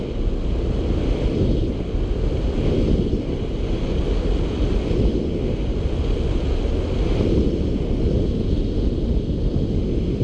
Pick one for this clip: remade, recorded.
recorded